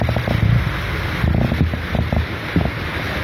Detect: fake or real real